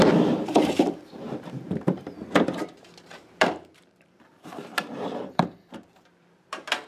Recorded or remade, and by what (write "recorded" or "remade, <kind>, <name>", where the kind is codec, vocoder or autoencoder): remade, vocoder, BigVGAN v2